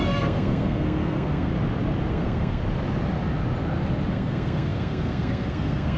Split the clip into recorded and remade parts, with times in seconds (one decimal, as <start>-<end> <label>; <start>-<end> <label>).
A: 0.0-1.5 remade; 1.5-2.1 recorded; 2.1-2.6 remade; 2.6-4.1 recorded; 4.1-6.0 remade